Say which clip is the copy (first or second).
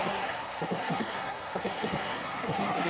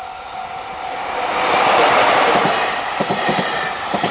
first